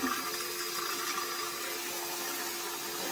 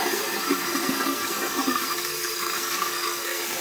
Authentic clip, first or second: first